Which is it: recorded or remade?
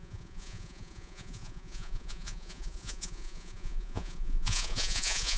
remade